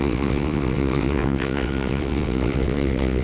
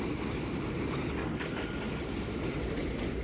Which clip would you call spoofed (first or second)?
first